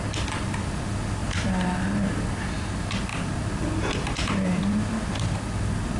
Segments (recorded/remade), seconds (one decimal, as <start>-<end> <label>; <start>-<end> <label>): 0.0-6.0 recorded